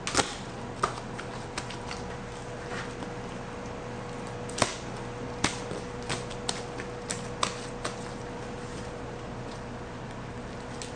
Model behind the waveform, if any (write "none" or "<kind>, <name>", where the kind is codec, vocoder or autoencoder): none